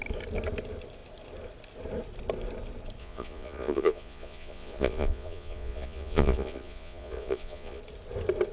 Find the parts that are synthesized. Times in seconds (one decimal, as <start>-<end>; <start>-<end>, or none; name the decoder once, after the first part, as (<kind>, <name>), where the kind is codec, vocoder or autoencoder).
3.0-7.8 (vocoder, Vocos)